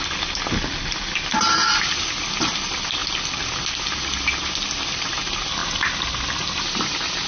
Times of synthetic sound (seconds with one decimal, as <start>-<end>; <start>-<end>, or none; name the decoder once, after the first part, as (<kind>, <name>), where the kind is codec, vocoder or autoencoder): none